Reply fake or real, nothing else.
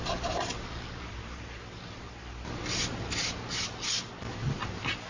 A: real